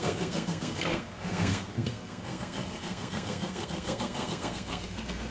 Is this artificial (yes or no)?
yes